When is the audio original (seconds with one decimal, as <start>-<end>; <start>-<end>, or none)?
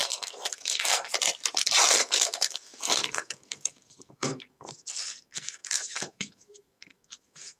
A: 1.1-1.9